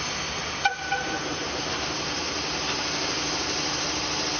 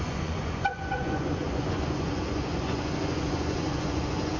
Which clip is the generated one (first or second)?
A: second